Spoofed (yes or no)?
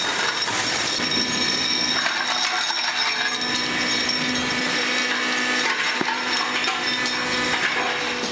no